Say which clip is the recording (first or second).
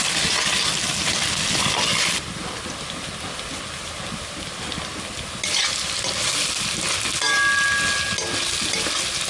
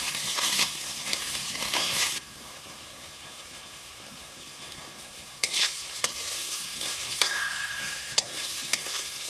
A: first